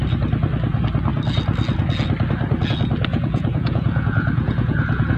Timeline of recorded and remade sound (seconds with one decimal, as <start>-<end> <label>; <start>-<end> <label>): 0.0-3.1 recorded; 3.1-5.2 remade